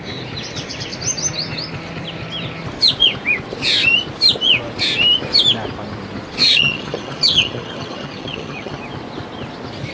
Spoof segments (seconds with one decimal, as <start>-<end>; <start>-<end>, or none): 6.4-8.8